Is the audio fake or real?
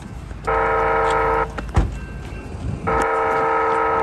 real